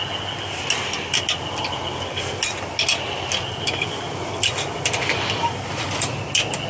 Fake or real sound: real